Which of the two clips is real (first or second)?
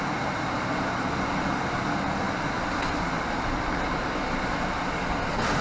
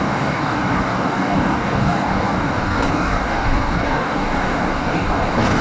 first